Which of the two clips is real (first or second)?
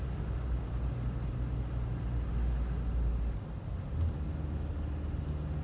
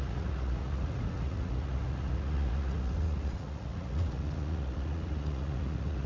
first